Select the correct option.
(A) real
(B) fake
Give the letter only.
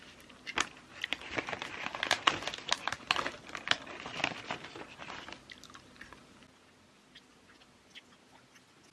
A